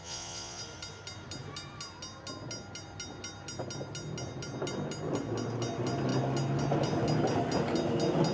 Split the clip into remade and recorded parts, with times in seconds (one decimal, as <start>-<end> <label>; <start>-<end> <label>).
0.0-0.6 remade; 0.6-8.3 recorded